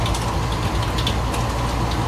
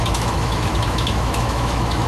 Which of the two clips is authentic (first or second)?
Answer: first